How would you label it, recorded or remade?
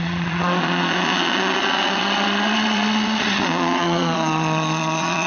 remade